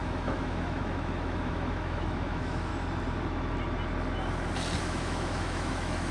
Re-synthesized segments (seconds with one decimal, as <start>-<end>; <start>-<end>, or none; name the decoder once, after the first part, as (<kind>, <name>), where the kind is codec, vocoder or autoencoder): 0.0-2.7 (autoencoder, DAC-VAE); 4.8-6.1